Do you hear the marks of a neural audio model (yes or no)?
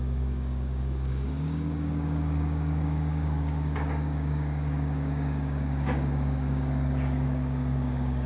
yes